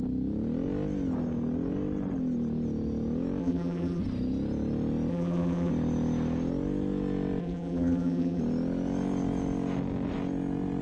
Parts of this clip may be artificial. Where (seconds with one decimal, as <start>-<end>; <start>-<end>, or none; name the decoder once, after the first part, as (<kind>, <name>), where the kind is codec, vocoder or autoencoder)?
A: 3.4-4.0 (vocoder, BigVGAN v2); 5.1-5.7; 7.4-8.4